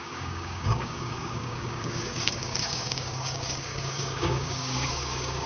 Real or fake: fake